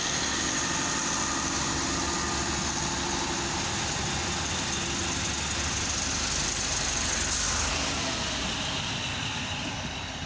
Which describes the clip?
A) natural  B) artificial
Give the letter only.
A